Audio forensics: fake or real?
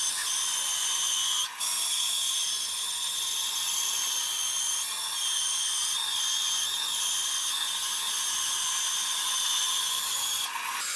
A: fake